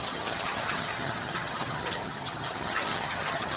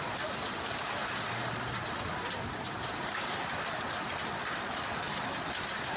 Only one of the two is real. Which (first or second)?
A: second